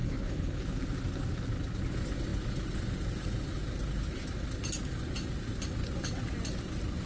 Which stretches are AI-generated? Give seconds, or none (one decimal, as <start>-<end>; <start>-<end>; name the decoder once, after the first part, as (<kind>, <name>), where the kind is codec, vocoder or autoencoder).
0.0-0.6 (codec, HILCodec)